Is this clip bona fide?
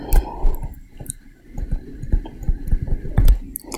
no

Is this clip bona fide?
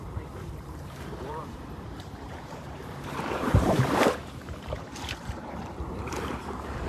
no